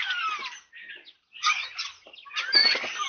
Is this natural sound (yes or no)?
yes